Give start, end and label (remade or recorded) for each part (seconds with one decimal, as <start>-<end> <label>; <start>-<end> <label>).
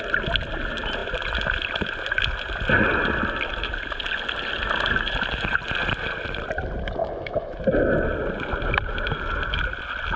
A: 0.0-7.0 recorded; 7.0-7.6 remade; 7.6-10.2 recorded